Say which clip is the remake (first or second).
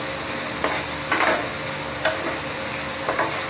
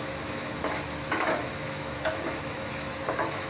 second